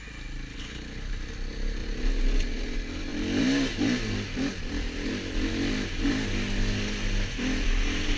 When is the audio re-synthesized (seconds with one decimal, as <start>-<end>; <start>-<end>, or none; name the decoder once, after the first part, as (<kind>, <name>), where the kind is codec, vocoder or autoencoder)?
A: 0.5-1.1 (codec, HILCodec)